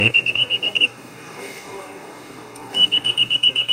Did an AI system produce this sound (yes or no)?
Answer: yes